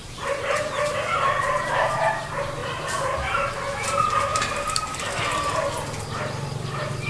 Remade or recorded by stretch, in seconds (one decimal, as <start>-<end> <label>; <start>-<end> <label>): 0.0-1.2 remade; 1.2-2.6 recorded; 2.6-3.5 remade; 3.5-4.3 recorded; 4.3-5.0 remade; 5.0-7.1 recorded